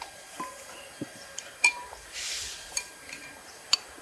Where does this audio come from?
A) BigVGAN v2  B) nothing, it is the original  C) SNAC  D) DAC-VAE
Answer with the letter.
A